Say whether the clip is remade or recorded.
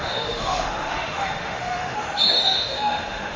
remade